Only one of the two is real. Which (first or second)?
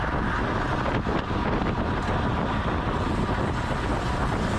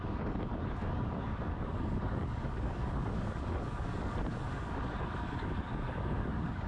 first